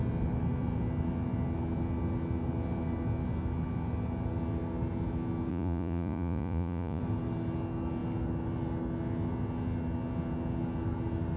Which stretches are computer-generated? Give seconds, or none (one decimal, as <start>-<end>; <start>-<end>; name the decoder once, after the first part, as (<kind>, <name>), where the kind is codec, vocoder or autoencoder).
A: 5.5-7.0 (vocoder, Vocos)